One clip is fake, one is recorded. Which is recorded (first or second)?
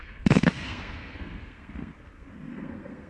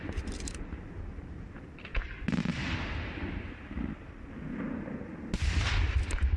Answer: second